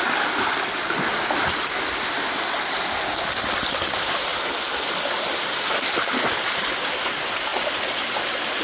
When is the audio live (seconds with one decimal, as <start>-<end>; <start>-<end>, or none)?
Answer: 0.0-8.6